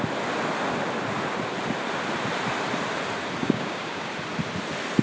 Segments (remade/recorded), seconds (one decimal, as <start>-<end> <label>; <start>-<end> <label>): 0.0-3.4 recorded; 3.4-4.1 remade; 4.1-5.0 recorded